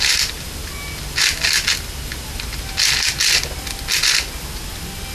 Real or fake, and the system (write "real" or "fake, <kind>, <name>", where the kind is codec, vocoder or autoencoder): real